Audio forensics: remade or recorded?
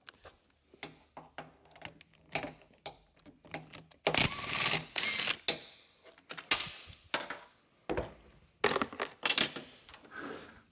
recorded